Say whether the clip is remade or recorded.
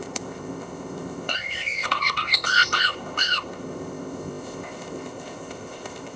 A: remade